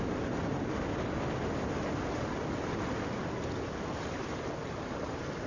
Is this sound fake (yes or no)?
no